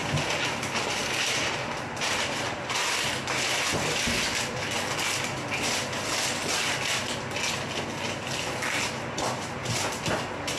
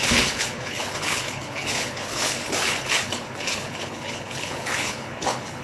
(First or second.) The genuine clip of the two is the first